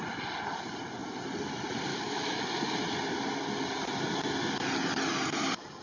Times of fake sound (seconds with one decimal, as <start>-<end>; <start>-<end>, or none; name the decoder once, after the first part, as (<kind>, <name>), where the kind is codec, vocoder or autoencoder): 1.9-2.4 (autoencoder, DAC-VAE)